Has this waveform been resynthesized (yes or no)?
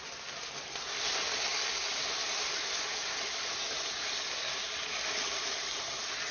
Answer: no